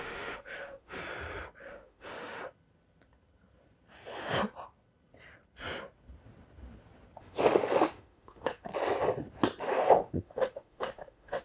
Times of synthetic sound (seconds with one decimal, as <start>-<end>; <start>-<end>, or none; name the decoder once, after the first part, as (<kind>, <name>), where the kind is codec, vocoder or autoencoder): 0.0-1.0 (autoencoder, DAC-VAE); 1.6-2.4; 7.2-8.7; 9.6-11.4